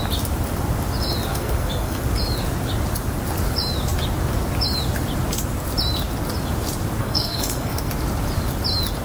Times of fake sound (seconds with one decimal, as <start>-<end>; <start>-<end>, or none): 1.3-2.0; 7.0-7.9

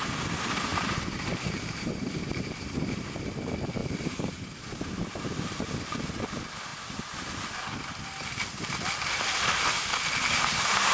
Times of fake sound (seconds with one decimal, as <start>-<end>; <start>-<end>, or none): 0.7-3.3; 3.8-5.7

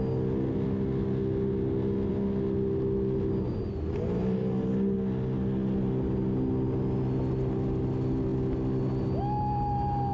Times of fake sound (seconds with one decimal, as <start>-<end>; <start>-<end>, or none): none

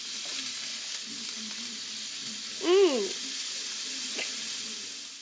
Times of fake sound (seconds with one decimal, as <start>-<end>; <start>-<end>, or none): 0.7-1.2

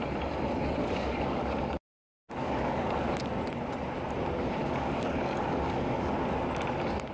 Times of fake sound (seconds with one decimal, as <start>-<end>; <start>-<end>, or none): 0.8-1.8; 2.4-2.9; 4.6-6.1